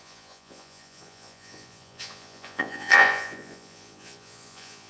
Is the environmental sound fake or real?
fake